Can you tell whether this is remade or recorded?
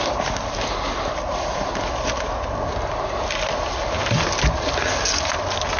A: recorded